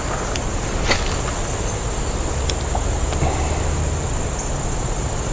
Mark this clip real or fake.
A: real